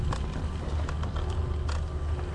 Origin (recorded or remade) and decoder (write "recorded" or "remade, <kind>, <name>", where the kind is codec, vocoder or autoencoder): recorded